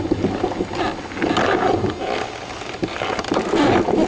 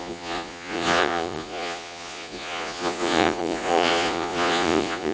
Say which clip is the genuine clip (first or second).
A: first